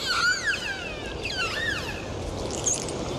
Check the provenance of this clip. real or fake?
real